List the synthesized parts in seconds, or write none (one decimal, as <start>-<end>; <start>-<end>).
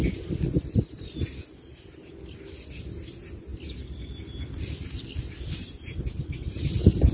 none